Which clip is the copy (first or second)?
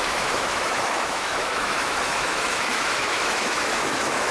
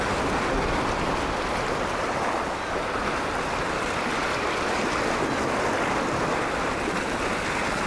first